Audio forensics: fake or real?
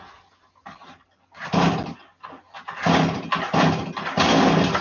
real